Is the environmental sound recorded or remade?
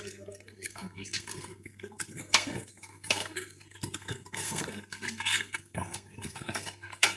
remade